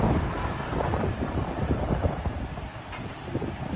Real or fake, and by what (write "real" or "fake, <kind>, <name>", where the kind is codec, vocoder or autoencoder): real